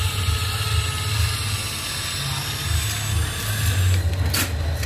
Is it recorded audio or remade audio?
recorded